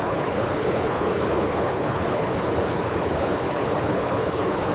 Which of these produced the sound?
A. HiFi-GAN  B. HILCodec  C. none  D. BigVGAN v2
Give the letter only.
B